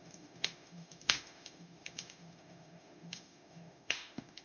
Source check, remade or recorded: remade